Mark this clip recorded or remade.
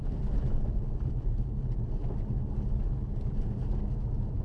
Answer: recorded